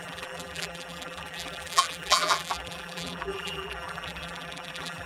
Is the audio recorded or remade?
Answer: remade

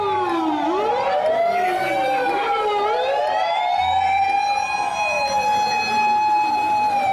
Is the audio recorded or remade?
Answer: remade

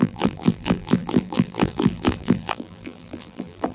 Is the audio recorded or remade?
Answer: remade